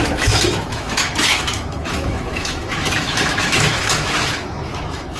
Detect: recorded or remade remade